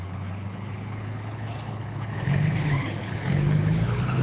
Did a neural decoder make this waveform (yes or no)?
yes